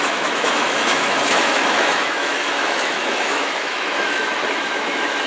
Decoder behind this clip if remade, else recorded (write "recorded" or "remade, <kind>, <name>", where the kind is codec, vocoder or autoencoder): remade, autoencoder, DAC-VAE